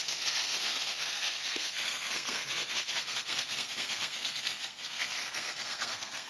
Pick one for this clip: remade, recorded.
remade